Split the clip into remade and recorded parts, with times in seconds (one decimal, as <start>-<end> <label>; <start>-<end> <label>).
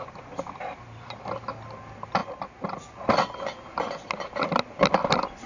0.0-5.5 recorded